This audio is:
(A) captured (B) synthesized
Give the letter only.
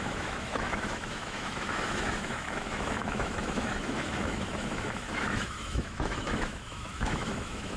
B